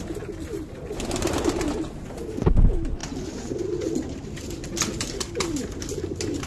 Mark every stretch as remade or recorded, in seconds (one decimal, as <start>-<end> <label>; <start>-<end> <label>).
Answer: 0.0-6.5 recorded